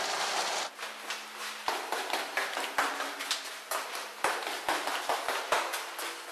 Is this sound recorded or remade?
recorded